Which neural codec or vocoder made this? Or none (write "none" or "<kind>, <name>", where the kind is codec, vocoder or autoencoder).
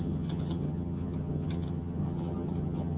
vocoder, HiFi-GAN